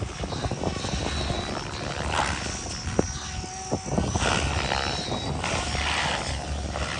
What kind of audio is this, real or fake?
real